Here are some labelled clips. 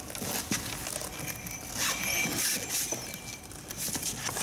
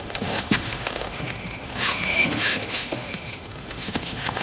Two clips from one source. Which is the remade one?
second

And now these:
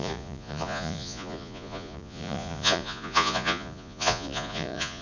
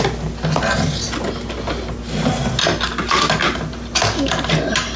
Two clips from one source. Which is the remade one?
first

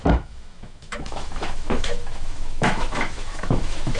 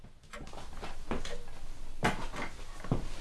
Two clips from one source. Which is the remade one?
first